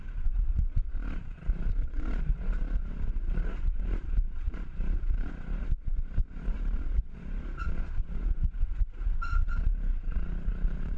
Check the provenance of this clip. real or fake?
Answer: fake